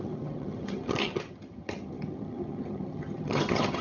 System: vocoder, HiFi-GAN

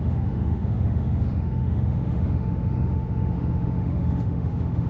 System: autoencoder, DAC-VAE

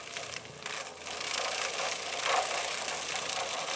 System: none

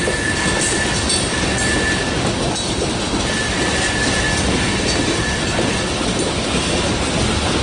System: none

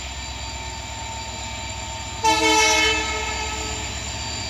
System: none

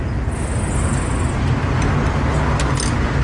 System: none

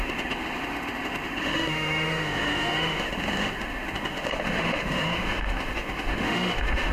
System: autoencoder, DAC-VAE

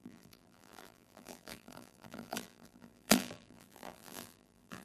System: vocoder, BigVGAN v2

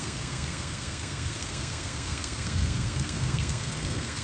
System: codec, SNAC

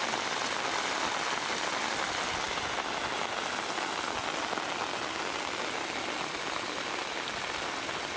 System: none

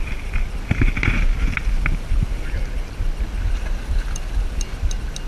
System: none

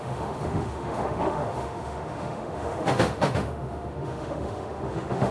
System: autoencoder, DAC-VAE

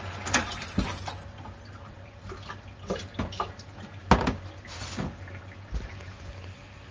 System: none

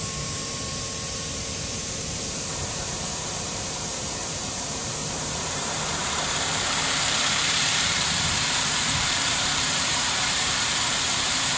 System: vocoder, BigVGAN v2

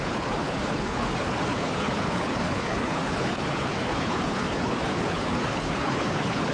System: codec, HILCodec